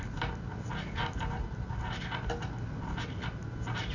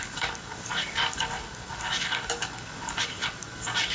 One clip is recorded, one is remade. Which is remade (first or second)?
second